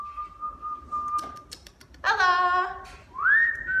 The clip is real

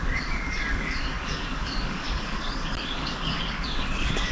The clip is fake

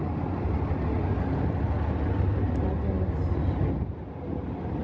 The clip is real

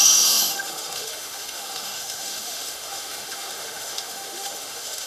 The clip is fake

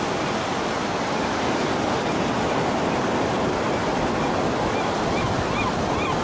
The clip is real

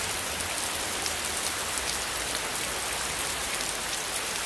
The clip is real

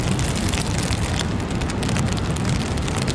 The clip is real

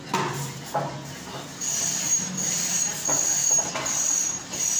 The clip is real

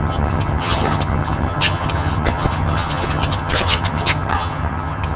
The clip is fake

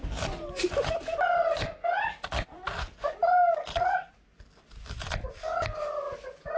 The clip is real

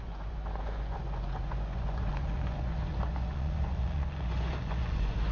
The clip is fake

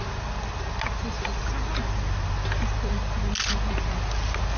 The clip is real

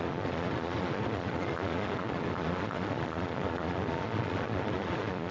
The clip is fake